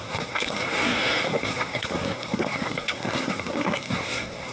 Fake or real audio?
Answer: fake